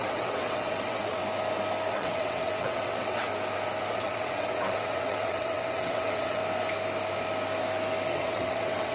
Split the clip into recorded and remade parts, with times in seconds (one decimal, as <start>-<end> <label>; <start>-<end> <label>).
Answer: 0.0-1.2 remade; 1.2-1.9 recorded; 1.9-3.3 remade; 3.3-3.9 recorded; 3.9-6.4 remade; 6.4-8.1 recorded; 8.1-8.9 remade